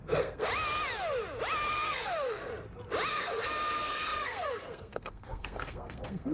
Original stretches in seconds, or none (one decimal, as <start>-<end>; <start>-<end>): 0.5-1.7; 2.5-3.1